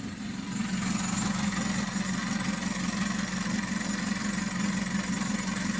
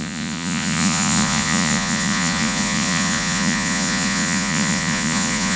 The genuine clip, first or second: first